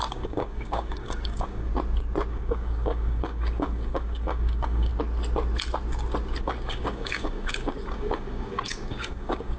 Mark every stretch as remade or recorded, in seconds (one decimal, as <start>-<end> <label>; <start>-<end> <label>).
0.0-1.7 remade; 1.7-2.3 recorded; 2.3-4.9 remade; 4.9-6.4 recorded; 6.4-9.6 remade